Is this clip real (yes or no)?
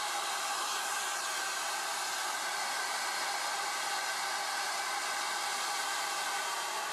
yes